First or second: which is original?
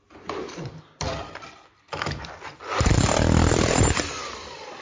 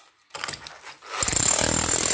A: second